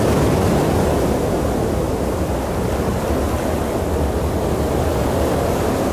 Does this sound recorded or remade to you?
recorded